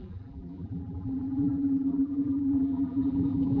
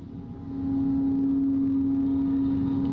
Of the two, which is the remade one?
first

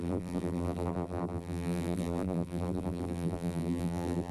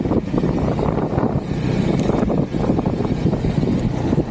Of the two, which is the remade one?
first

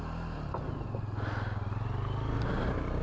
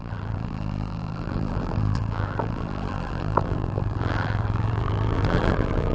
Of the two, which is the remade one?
second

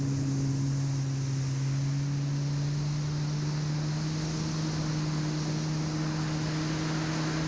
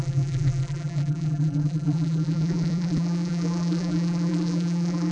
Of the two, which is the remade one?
second